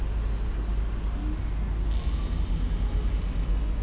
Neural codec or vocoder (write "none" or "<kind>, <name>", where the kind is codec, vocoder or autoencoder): none